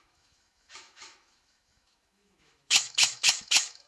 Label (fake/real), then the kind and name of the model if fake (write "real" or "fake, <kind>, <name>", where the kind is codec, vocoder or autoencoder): fake, autoencoder, DAC-VAE